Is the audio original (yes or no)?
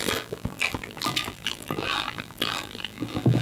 no